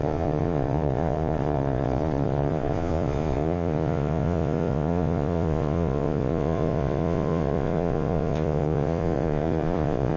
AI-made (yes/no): yes